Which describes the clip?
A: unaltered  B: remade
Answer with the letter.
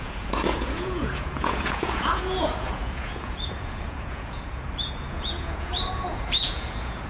B